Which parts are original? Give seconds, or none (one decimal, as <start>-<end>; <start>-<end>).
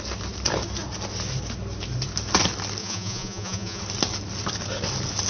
0.0-2.8; 3.8-5.3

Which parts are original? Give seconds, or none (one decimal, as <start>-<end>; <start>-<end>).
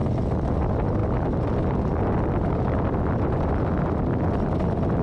0.0-5.0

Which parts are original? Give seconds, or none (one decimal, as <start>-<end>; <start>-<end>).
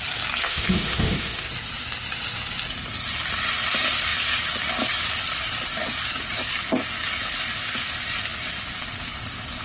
0.0-0.4; 1.5-9.6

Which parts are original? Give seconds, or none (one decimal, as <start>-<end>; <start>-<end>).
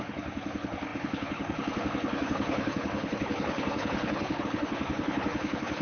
none